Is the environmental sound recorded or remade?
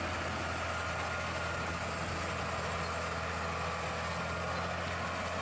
recorded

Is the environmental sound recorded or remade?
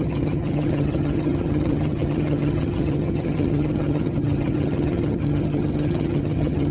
remade